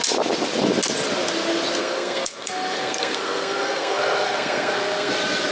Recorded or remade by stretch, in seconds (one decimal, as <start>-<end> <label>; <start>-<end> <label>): 0.0-1.8 recorded; 1.8-5.1 remade; 5.1-5.5 recorded